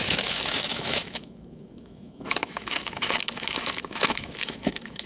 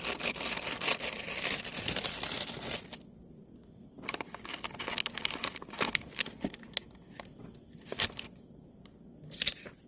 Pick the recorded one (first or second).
second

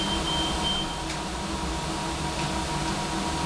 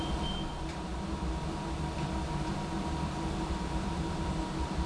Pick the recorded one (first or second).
first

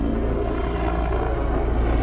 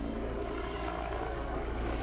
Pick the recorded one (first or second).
first